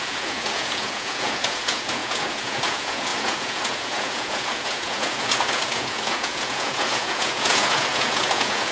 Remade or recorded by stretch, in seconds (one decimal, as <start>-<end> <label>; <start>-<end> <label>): 0.0-8.7 remade